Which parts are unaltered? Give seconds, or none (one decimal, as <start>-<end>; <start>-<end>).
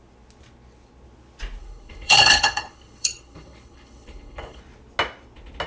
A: 0.0-1.6; 4.6-5.7